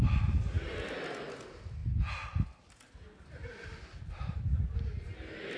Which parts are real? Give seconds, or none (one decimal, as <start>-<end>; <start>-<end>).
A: 0.0-5.6